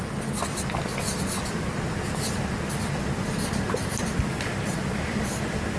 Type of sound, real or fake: real